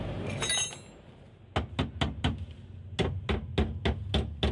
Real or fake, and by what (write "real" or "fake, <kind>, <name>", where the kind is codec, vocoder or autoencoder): real